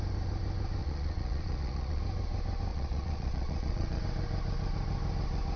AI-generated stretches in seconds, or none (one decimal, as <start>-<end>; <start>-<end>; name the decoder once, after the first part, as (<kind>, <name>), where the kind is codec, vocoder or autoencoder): 0.8-2.0 (vocoder, Vocos); 2.7-4.0